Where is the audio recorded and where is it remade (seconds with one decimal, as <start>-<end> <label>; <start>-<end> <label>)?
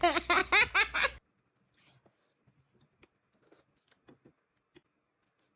0.0-5.6 recorded